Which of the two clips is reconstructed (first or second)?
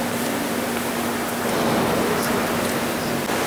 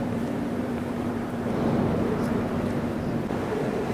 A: second